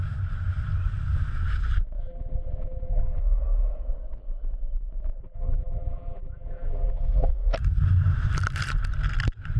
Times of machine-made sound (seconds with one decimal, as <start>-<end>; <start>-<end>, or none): 2.0-3.2; 5.2-7.3